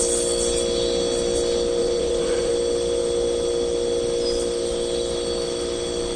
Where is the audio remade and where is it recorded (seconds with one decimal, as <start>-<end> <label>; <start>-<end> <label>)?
0.0-1.8 recorded; 1.8-2.5 remade; 2.5-6.2 recorded